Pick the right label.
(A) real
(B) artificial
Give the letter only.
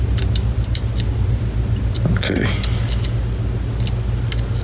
A